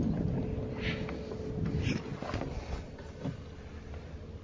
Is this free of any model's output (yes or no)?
yes